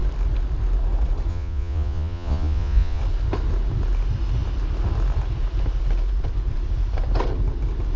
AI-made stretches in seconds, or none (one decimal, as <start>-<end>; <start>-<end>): 1.3-3.0